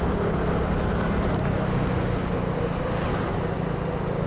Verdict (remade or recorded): recorded